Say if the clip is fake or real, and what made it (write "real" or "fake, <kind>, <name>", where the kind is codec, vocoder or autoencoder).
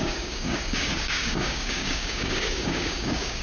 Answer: fake, codec, DAC